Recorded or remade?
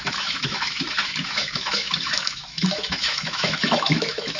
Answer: remade